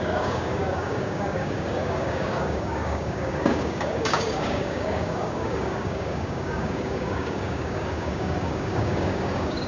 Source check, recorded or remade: remade